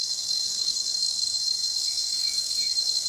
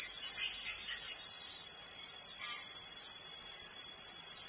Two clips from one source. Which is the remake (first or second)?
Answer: first